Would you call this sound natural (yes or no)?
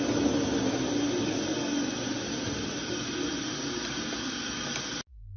yes